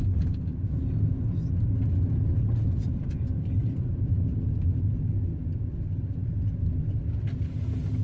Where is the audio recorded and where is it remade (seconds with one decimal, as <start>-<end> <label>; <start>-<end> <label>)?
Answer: 0.0-3.6 recorded; 3.6-6.6 remade; 6.6-8.0 recorded